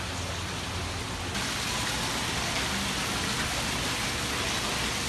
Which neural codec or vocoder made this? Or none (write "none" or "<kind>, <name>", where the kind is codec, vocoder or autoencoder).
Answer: none